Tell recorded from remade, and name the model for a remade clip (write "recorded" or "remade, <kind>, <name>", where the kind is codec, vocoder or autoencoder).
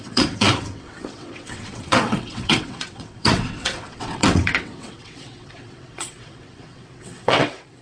remade, vocoder, WaveNeXt